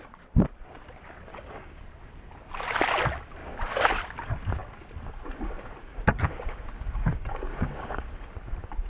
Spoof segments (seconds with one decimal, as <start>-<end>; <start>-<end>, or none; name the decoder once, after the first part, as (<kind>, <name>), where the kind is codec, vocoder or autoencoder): 1.3-1.8 (codec, DAC); 3.4-4.0; 5.8-8.3